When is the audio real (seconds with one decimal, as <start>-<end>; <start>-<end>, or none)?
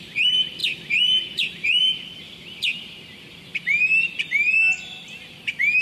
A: 0.6-4.1; 4.6-5.8